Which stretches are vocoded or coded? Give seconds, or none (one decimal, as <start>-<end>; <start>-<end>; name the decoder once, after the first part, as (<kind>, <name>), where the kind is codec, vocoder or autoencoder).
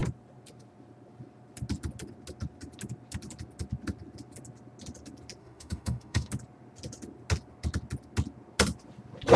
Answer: 5.4-6.3 (autoencoder, DAC-VAE)